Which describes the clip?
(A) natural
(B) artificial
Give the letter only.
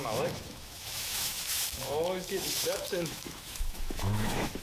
B